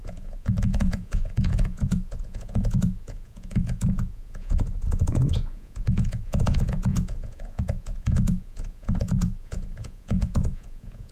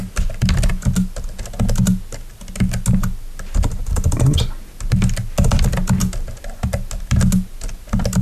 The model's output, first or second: first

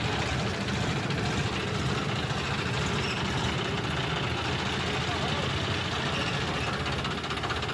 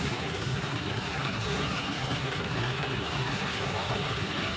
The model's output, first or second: second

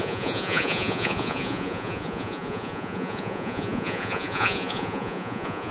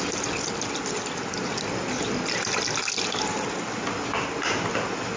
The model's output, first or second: first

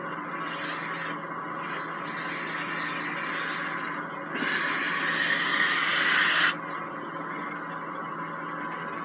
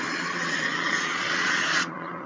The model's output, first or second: second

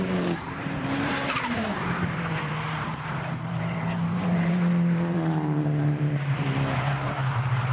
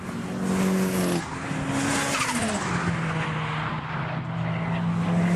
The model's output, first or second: first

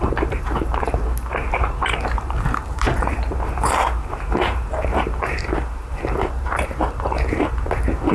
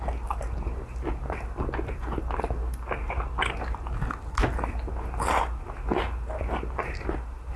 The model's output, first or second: first